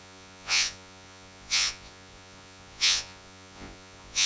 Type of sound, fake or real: fake